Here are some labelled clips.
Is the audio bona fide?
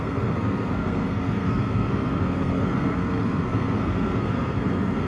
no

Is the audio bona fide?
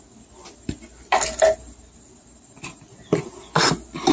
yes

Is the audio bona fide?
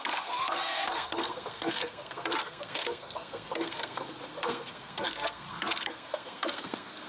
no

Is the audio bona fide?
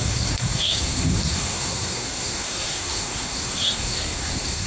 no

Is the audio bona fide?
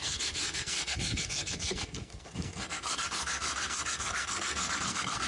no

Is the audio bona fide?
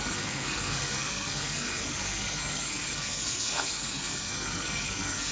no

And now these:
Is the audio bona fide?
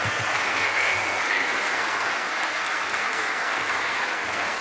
no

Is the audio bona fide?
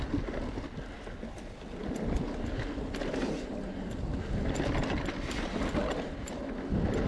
yes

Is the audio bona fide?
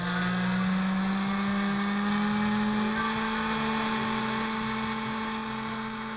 yes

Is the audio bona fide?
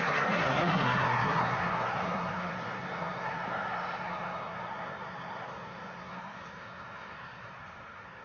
no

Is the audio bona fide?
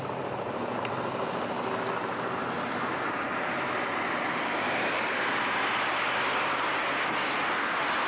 yes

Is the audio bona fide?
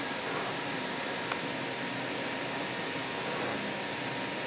yes